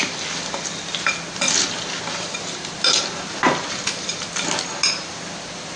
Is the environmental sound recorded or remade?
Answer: recorded